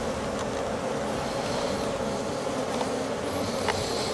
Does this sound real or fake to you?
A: real